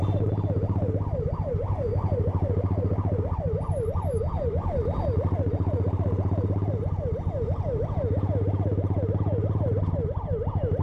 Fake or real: real